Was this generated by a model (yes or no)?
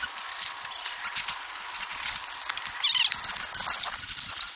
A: no